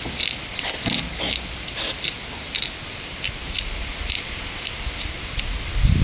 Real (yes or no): yes